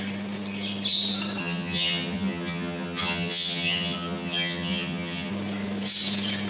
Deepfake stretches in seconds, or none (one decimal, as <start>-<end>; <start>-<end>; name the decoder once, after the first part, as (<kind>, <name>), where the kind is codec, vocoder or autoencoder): 1.4-5.3 (vocoder, HiFi-GAN)